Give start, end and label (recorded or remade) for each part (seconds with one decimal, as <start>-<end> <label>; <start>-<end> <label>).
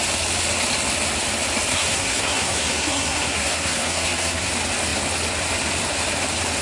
0.0-1.7 recorded; 1.7-4.5 remade; 4.5-6.6 recorded